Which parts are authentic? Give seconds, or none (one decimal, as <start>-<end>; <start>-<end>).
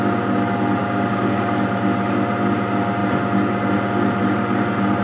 0.0-0.8; 1.5-5.0